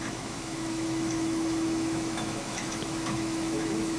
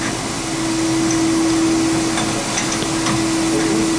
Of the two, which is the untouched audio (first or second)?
second